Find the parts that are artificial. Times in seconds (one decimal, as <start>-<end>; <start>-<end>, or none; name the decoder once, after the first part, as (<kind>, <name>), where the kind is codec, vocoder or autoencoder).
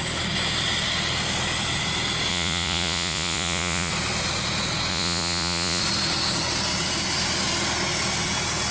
2.3-3.9 (vocoder, Vocos); 4.9-5.8